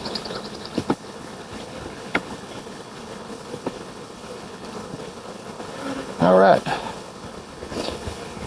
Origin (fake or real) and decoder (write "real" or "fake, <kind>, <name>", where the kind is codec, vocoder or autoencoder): fake, codec, HILCodec